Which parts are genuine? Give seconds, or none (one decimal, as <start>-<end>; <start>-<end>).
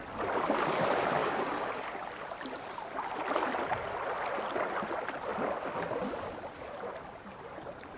0.0-1.2; 1.7-8.0